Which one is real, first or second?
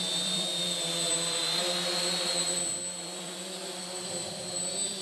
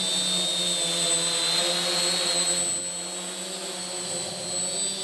second